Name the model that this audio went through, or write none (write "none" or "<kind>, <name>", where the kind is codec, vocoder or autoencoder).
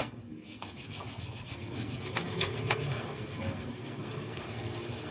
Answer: codec, SNAC